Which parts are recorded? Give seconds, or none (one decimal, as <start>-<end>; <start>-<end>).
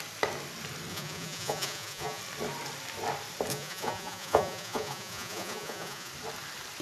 0.0-0.9; 2.2-3.5; 6.1-6.8